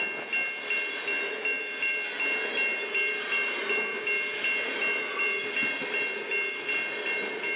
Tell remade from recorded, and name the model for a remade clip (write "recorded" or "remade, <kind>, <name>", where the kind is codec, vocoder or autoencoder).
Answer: recorded